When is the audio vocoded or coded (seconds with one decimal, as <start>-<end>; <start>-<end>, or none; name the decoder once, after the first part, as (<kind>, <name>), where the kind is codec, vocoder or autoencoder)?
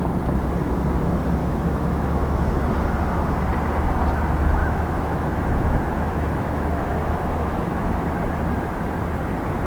1.4-2.6 (autoencoder, DAC-VAE); 4.6-8.0